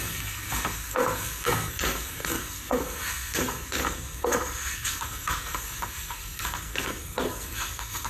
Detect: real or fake fake